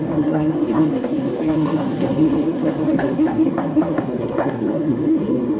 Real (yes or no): no